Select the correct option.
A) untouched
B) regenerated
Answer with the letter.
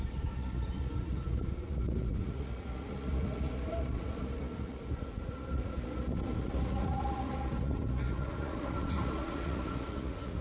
B